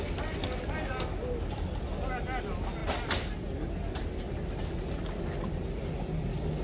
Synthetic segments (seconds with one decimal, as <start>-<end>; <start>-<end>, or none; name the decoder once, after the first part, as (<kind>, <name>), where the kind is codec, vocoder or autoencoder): none